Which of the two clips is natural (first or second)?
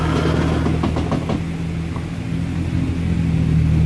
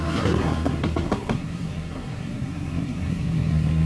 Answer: first